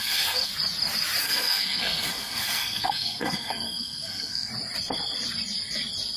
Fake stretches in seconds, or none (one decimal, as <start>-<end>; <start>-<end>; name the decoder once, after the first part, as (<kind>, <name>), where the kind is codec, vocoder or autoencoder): 0.0-0.5 (codec, SNAC); 1.2-4.5